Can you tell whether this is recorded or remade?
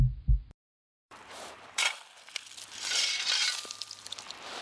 remade